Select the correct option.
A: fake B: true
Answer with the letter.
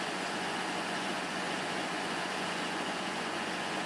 A